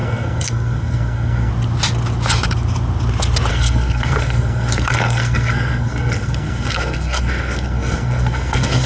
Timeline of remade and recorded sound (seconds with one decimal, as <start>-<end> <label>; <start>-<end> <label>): 0.0-1.5 remade; 1.5-3.5 recorded; 3.5-8.9 remade